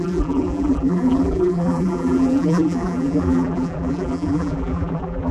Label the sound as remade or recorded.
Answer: remade